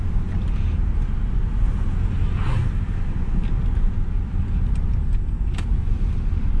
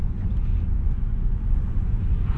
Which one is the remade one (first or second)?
second